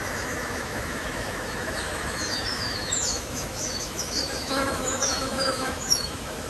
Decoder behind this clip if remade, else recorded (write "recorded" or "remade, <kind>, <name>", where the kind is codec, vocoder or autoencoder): remade, autoencoder, DAC-VAE